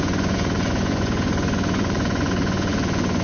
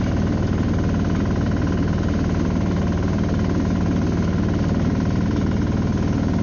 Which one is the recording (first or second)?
second